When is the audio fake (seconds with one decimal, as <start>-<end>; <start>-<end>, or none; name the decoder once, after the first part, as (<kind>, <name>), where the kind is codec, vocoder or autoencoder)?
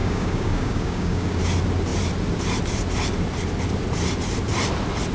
0.0-1.4 (codec, DAC)